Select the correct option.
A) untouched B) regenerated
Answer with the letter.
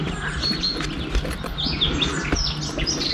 A